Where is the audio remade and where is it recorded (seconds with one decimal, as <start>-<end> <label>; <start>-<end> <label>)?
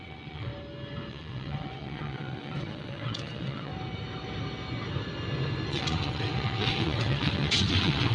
0.0-0.5 remade; 0.5-1.1 recorded; 1.1-3.7 remade; 3.7-5.7 recorded; 5.7-8.1 remade